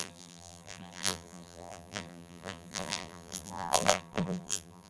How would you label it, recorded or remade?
remade